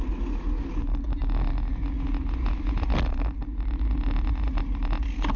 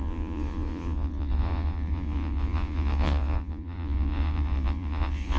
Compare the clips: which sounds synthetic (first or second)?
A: second